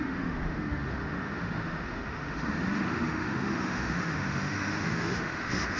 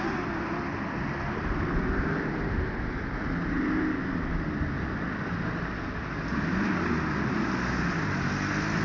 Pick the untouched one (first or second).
second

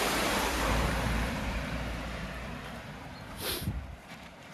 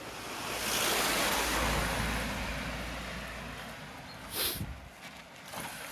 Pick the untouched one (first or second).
second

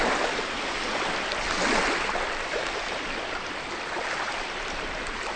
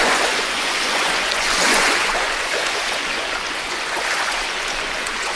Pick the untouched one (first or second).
first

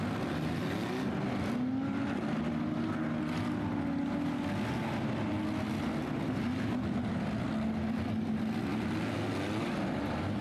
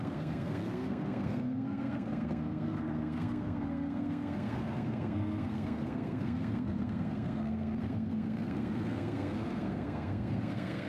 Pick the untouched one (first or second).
first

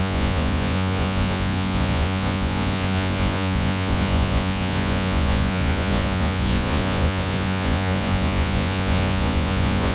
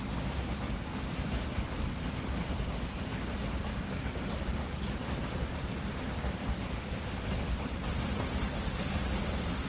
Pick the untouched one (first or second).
second